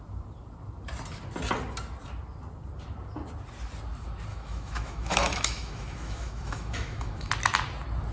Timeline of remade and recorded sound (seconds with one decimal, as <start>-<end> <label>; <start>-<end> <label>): 0.0-4.3 recorded; 4.3-7.3 remade; 7.3-8.1 recorded